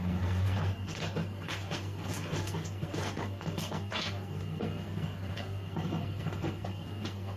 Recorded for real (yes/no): no